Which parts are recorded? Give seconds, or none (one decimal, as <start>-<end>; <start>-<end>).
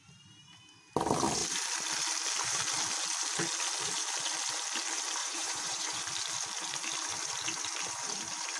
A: 0.0-5.2; 6.0-8.6